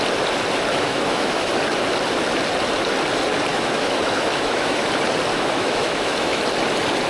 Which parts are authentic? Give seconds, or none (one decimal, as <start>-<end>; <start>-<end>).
0.0-0.7; 1.5-3.5; 4.8-5.3; 6.4-7.1